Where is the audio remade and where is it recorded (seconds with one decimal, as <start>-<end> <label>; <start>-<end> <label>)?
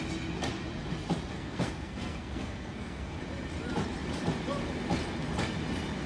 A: 0.0-1.3 recorded; 1.3-3.2 remade; 3.2-6.1 recorded